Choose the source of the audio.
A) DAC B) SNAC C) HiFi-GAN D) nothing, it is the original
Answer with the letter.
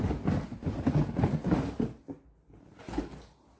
D